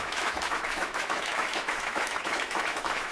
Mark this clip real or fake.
fake